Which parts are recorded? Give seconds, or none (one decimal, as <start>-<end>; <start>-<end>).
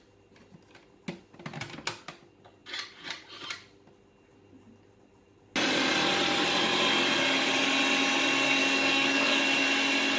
0.0-8.6; 9.4-10.2